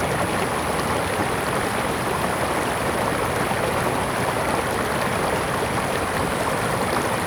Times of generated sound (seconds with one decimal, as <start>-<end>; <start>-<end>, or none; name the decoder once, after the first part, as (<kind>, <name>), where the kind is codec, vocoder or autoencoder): 1.2-2.2 (vocoder, BigVGAN v2)

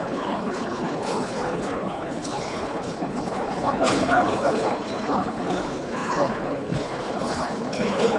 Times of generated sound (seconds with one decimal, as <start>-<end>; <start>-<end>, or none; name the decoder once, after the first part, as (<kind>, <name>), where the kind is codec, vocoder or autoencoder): 0.0-8.2 (codec, HILCodec)

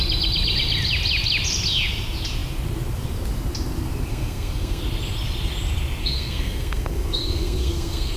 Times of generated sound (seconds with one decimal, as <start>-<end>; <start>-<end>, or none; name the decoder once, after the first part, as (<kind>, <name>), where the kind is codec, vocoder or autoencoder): 4.1-4.8 (codec, SNAC); 6.0-8.2

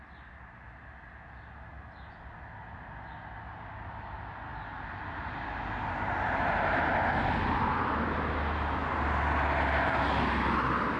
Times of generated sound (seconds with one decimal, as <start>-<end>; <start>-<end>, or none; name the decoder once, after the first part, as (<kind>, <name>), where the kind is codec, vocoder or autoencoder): none

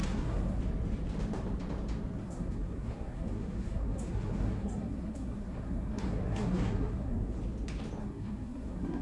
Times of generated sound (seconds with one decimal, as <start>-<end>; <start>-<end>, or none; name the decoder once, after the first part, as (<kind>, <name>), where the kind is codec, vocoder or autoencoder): 0.0-0.6 (codec, SNAC); 2.2-7.4; 8.0-9.0

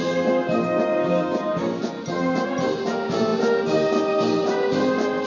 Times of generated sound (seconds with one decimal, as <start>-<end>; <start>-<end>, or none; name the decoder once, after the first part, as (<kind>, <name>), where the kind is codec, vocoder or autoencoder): 1.0-1.8 (codec, DAC)

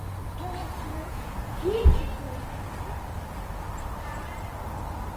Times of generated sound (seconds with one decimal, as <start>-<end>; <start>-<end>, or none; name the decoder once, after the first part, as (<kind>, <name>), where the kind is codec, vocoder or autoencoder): 0.6-2.0 (vocoder, Vocos)